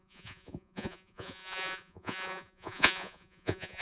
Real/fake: fake